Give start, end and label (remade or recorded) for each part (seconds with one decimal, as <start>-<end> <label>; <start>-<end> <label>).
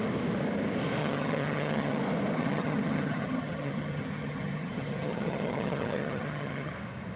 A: 0.0-1.0 recorded; 1.0-2.0 remade; 2.0-2.4 recorded; 2.4-6.7 remade; 6.7-7.2 recorded